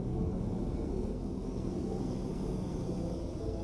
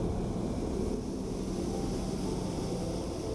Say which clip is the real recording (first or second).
second